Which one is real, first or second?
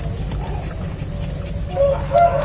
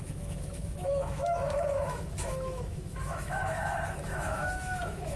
first